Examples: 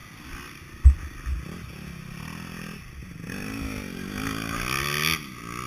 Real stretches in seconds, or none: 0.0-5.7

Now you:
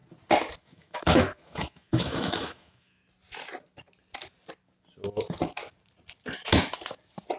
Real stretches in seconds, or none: 0.0-0.6; 3.0-7.4

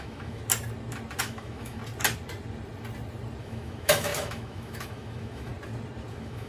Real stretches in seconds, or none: 0.4-1.2; 1.8-3.4; 5.5-6.1